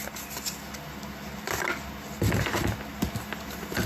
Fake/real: real